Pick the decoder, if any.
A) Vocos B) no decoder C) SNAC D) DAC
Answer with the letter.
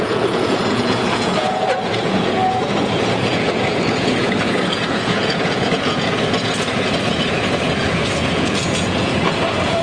A